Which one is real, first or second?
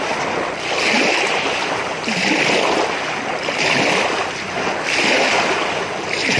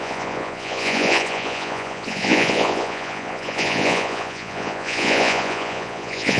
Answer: first